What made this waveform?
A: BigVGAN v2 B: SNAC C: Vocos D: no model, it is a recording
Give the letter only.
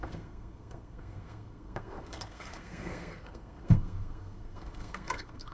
B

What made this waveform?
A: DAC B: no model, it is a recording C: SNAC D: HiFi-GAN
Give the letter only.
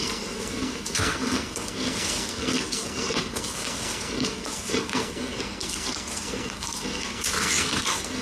C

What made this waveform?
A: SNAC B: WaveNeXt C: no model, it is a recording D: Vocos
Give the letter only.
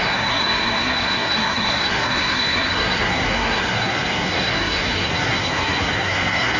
A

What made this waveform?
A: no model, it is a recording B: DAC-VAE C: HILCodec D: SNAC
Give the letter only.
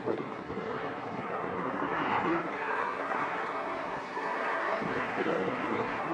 D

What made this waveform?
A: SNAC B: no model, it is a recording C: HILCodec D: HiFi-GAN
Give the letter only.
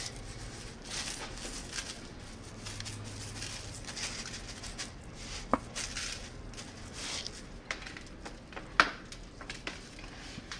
B